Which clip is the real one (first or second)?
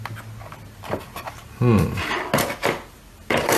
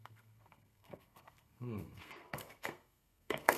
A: first